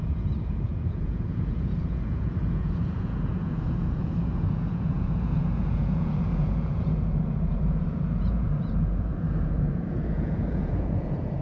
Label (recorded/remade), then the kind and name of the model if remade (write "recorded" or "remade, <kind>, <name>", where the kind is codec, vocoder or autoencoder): remade, vocoder, Vocos